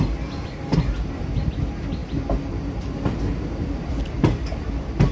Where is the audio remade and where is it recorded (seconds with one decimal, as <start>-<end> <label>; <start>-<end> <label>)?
0.0-5.1 recorded